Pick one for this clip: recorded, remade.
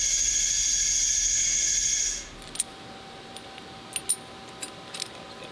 recorded